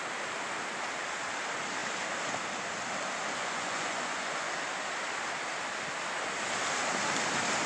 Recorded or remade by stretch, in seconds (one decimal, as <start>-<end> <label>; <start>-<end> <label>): 0.0-3.4 recorded; 3.4-4.5 remade; 4.5-7.7 recorded